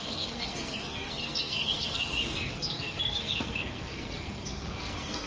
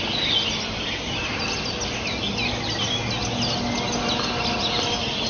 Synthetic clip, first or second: first